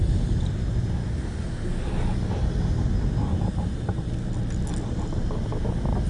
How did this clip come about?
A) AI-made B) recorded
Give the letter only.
B